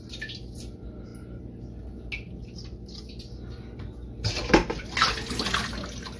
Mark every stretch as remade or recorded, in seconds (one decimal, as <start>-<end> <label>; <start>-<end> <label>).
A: 0.0-6.2 recorded